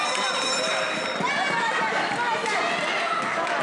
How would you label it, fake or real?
real